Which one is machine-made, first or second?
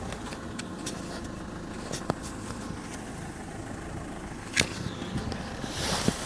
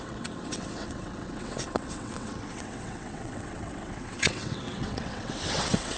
second